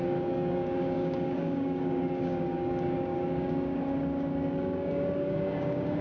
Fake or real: fake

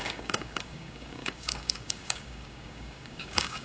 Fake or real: fake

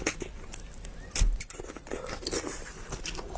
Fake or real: real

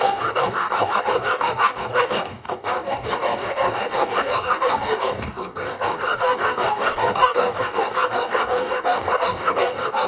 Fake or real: fake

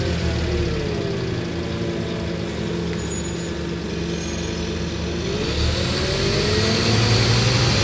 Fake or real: real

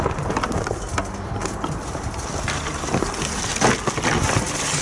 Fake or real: real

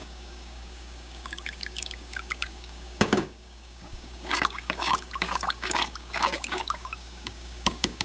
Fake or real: fake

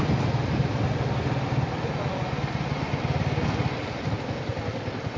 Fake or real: real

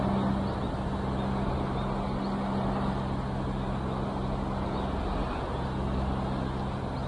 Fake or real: real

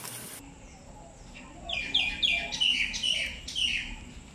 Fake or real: real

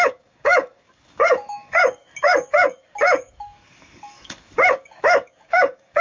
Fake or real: fake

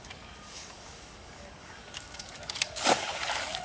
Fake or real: fake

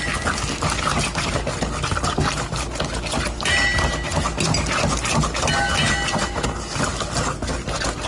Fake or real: real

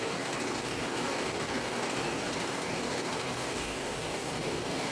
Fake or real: fake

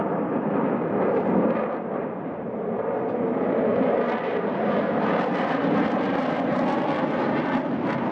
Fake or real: real